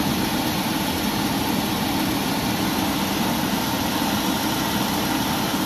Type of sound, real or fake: real